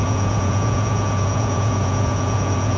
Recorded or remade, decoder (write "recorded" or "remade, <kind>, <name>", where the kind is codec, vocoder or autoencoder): remade, vocoder, Vocos